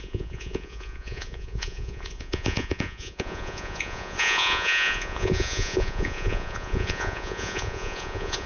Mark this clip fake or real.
fake